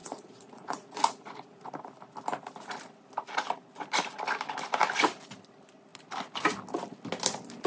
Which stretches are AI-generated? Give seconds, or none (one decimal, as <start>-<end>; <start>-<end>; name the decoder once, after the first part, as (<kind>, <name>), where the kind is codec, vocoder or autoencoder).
0.0-1.7 (vocoder, Vocos)

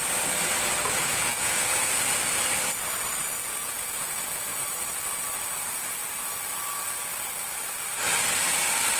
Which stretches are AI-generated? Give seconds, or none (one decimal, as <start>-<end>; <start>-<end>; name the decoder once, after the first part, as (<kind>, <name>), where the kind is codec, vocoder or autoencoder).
1.0-2.0 (vocoder, Vocos); 3.4-4.6

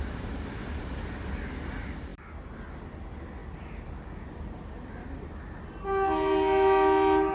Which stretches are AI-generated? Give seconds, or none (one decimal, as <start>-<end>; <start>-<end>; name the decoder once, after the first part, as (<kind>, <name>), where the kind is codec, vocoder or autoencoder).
none

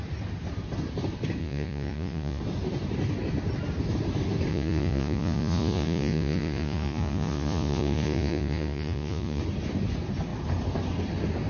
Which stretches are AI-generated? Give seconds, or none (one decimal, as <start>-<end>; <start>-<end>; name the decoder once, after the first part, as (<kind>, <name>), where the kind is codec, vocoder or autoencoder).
1.4-2.4 (vocoder, Vocos); 4.5-9.4

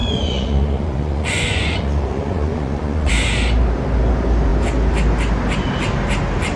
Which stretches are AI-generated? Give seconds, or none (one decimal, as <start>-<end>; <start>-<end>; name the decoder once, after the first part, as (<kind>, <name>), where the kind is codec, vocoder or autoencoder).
0.0-3.1 (vocoder, Vocos)

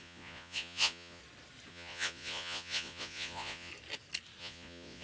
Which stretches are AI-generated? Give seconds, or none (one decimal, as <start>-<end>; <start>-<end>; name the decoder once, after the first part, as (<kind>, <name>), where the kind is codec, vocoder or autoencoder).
0.0-1.2 (vocoder, Vocos); 1.7-3.7; 4.4-5.0

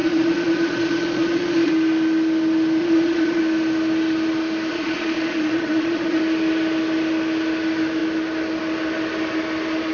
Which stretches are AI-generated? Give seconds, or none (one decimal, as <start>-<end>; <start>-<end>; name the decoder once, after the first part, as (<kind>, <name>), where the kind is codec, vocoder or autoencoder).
0.0-1.7 (vocoder, Vocos); 2.8-3.4; 4.7-6.2

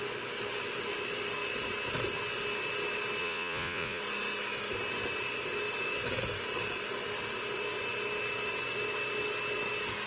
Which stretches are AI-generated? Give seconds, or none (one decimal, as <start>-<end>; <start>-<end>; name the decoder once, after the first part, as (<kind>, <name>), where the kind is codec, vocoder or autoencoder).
3.2-4.0 (vocoder, Vocos)